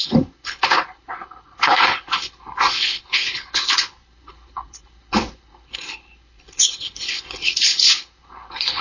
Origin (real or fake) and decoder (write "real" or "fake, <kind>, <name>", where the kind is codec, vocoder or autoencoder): fake, codec, HILCodec